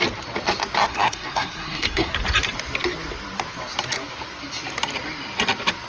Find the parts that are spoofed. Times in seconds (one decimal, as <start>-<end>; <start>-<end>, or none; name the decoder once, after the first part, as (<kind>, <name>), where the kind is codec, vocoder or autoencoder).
0.9-2.1 (codec, SNAC)